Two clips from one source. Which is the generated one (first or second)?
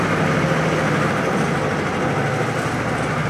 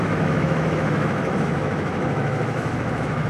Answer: second